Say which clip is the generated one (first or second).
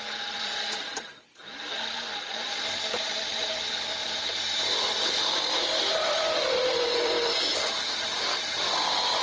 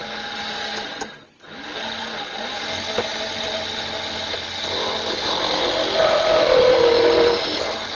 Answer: first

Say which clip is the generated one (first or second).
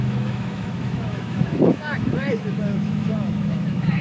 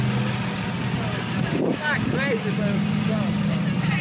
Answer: first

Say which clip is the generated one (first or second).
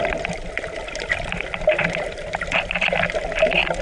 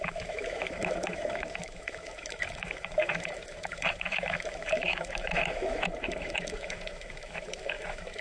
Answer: second